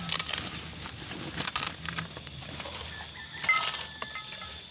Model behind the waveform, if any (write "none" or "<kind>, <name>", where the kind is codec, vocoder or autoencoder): none